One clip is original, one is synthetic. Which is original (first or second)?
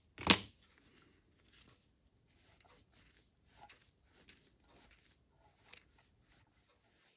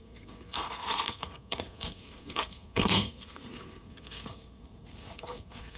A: first